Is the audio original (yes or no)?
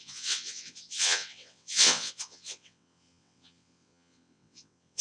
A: no